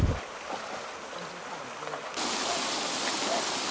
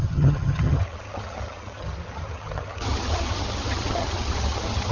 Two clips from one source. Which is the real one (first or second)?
first